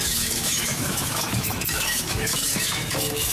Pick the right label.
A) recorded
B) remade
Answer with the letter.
B